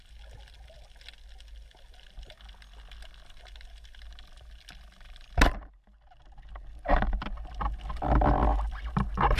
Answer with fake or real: real